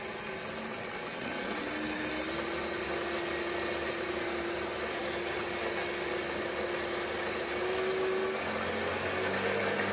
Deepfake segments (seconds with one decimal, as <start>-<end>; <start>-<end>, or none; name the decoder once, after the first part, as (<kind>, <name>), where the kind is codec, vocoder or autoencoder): 0.7-1.7 (vocoder, WaveNeXt)